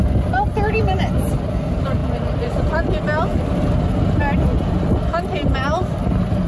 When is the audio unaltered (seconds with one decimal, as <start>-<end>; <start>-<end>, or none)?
0.0-6.5

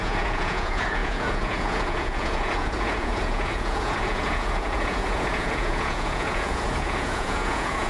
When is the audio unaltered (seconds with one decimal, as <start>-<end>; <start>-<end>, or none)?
none

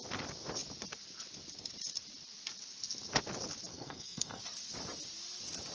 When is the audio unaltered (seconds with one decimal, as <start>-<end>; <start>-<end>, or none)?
0.0-3.7; 4.4-5.7

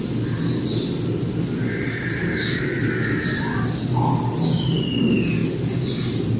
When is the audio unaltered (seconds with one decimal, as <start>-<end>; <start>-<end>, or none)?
0.0-2.2; 2.7-6.4

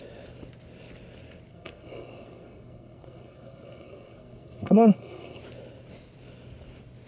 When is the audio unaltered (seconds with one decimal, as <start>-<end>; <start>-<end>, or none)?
0.0-1.5; 5.4-7.1

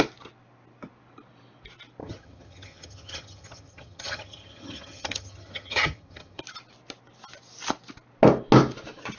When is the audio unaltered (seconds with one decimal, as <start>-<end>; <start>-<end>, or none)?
0.0-2.0; 6.4-9.2